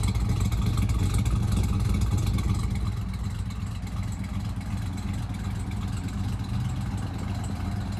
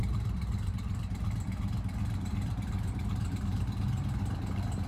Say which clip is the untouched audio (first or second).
first